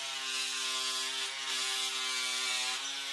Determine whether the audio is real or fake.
real